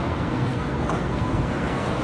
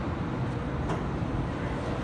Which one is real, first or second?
second